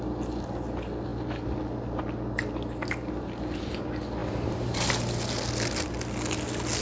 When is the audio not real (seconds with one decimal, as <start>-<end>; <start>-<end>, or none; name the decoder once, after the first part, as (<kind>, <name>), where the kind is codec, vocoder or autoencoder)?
4.2-4.9 (vocoder, BigVGAN v2)